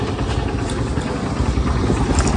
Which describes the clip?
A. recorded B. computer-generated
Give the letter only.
A